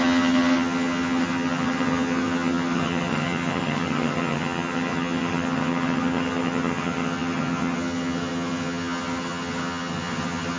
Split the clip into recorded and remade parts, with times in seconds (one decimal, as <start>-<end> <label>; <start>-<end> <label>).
0.0-10.6 remade